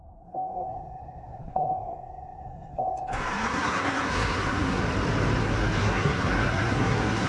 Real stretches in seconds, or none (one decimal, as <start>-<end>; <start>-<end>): 4.8-5.4

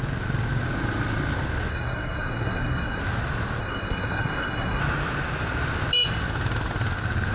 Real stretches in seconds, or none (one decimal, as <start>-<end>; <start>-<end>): 0.0-1.7; 3.0-3.6; 4.8-7.3

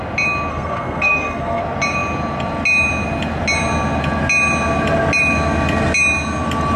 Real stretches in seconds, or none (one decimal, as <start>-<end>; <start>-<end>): 0.0-0.5; 1.6-6.8

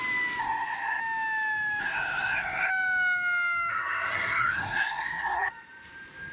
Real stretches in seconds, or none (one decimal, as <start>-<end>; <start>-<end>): 0.0-0.4; 1.0-1.8; 2.7-3.7; 5.5-6.3

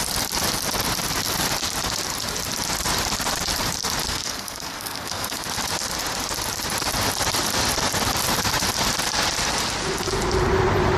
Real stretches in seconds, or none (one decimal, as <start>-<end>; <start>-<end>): 0.0-4.1; 5.5-11.0

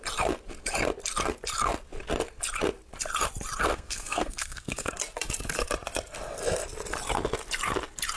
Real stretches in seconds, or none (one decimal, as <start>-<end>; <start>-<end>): 0.0-3.7; 4.9-8.2